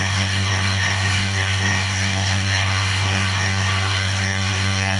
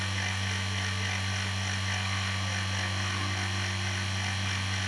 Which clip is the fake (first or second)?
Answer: first